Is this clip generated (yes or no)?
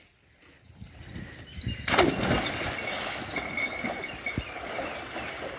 no